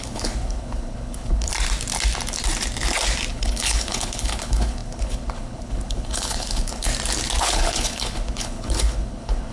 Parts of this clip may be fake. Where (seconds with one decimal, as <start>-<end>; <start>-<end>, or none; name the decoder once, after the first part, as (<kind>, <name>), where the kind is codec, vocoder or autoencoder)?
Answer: 0.0-1.5 (codec, HILCodec); 3.3-6.9; 7.4-9.5